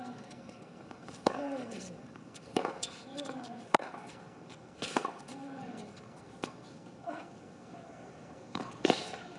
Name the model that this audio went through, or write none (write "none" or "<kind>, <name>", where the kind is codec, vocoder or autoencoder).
codec, SNAC